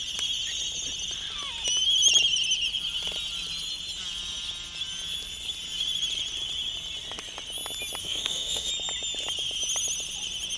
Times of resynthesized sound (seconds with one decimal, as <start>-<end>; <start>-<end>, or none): 8.0-8.7